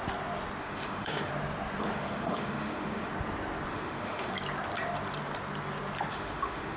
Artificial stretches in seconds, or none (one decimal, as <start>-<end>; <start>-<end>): 0.6-1.3; 1.8-3.1; 3.7-4.3; 6.1-6.8